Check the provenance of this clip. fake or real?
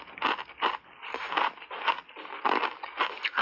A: real